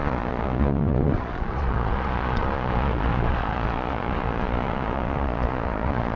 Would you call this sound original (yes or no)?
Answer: no